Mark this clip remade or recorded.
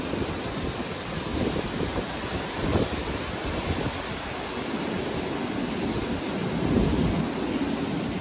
recorded